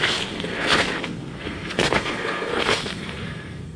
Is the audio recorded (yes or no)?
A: no